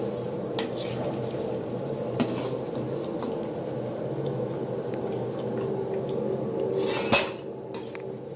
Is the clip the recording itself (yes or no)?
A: yes